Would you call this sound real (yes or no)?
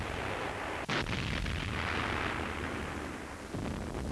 yes